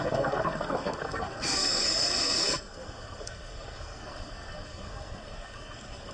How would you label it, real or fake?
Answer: fake